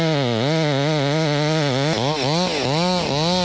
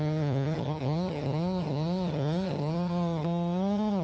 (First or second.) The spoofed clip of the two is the second